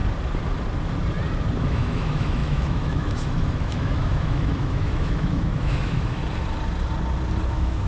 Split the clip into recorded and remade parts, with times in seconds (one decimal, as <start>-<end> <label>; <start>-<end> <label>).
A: 0.0-1.6 recorded; 1.6-6.2 remade; 6.2-7.5 recorded; 7.5-7.9 remade